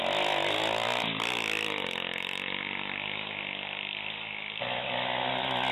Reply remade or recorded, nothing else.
recorded